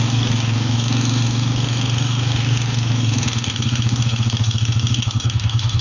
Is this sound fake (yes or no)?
yes